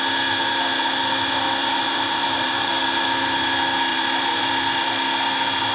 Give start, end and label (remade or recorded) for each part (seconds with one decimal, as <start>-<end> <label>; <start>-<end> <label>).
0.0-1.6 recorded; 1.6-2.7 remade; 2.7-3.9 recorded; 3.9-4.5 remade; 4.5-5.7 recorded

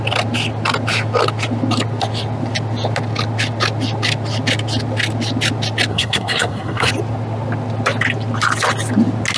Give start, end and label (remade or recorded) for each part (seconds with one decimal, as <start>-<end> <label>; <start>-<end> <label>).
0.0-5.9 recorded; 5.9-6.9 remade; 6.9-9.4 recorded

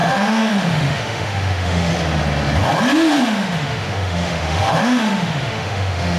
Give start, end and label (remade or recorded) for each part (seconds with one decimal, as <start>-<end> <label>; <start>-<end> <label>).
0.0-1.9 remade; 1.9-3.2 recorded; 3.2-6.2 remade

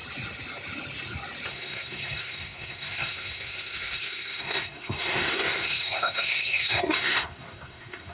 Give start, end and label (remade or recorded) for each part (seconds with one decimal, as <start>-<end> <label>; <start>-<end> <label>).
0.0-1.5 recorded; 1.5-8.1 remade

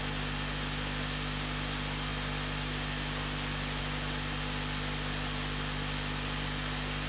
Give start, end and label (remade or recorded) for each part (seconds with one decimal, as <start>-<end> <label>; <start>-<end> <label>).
0.0-7.1 recorded

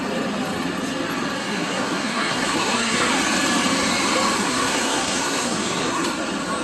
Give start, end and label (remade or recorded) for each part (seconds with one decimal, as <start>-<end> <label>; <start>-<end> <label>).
0.0-1.4 recorded; 1.4-3.1 remade; 3.1-4.4 recorded; 4.4-6.0 remade; 6.0-6.6 recorded

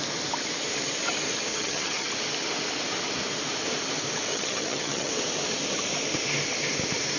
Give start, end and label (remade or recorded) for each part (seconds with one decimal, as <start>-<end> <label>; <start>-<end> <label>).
0.0-1.5 recorded; 1.5-2.1 remade; 2.1-4.3 recorded; 4.3-5.1 remade; 5.1-7.2 recorded